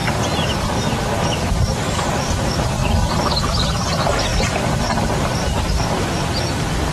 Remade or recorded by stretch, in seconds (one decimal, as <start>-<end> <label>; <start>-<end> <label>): 0.0-3.5 recorded; 3.5-6.9 remade